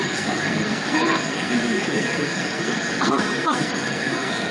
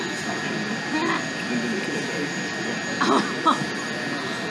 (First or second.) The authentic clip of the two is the second